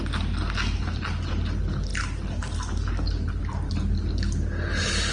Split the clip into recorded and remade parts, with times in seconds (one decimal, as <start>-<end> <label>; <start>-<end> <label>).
0.0-5.1 recorded